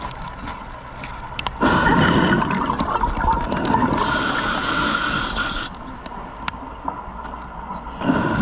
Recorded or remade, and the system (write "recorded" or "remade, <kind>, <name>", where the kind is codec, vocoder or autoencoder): recorded